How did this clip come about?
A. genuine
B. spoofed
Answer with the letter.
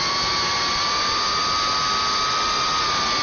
A